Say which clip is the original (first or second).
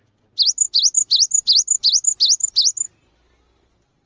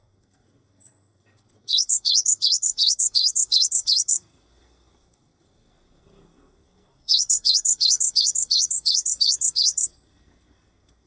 first